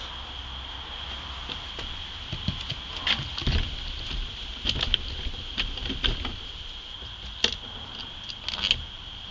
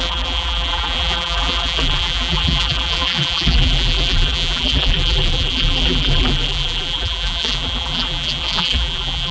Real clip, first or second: first